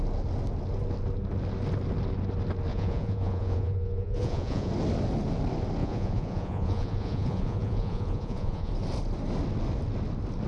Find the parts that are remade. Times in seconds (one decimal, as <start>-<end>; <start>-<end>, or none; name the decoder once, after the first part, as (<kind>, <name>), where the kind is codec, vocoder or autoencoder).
2.7-4.7 (vocoder, Vocos); 5.8-8.7